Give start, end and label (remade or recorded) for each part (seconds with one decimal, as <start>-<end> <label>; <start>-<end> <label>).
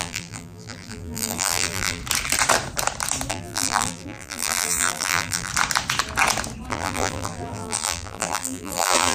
0.0-2.0 remade; 2.0-3.3 recorded; 3.3-5.5 remade; 5.5-6.7 recorded; 6.7-9.1 remade